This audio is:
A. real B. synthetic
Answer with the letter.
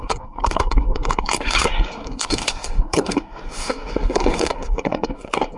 B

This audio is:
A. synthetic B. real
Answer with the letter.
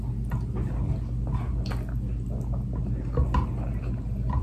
B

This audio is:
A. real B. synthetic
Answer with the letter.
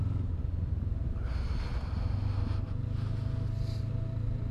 A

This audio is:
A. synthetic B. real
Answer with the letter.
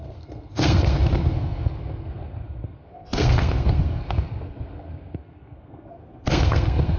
A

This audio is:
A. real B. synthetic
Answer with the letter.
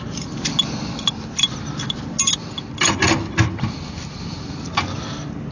A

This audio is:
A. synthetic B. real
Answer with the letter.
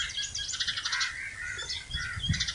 B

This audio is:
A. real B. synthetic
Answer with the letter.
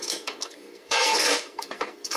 B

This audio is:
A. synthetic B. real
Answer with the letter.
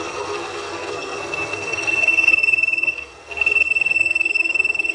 A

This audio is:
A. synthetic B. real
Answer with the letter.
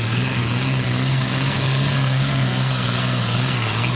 A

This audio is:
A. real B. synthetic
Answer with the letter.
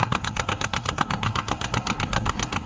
B